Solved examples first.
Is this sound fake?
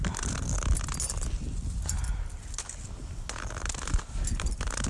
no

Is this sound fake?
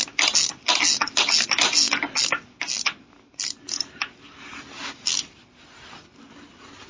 no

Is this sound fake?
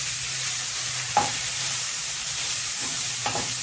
yes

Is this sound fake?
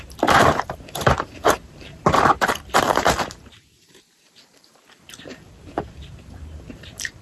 yes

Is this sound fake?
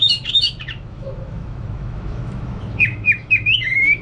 yes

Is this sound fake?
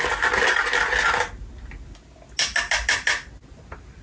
no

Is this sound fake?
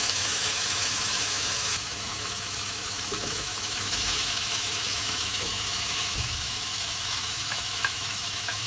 yes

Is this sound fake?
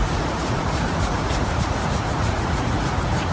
yes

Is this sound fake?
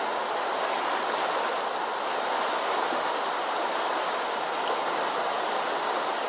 no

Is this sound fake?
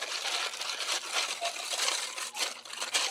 no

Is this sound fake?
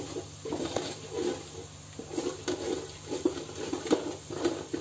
no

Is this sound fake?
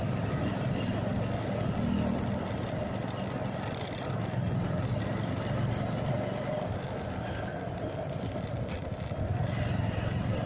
no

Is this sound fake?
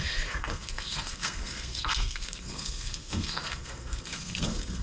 yes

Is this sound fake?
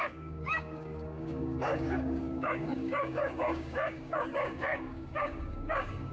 yes